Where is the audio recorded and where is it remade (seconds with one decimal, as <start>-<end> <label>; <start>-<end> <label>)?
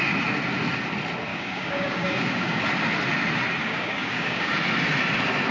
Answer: 0.0-1.3 recorded; 1.3-2.6 remade; 2.6-3.6 recorded; 3.6-4.5 remade; 4.5-5.5 recorded